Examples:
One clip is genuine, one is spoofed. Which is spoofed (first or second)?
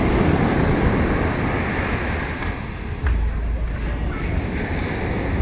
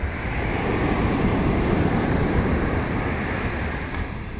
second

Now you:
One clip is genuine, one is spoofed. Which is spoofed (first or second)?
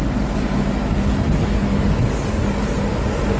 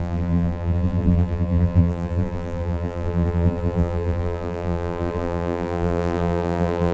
second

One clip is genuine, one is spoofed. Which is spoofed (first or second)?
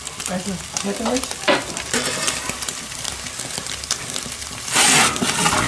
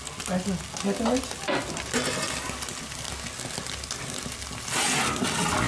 first